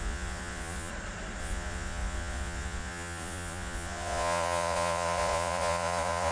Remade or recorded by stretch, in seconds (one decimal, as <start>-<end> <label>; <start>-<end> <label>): 0.0-0.9 remade; 0.9-1.4 recorded; 1.4-6.3 remade